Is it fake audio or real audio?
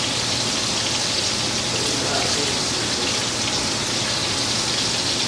real